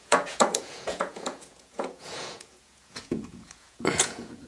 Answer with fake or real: fake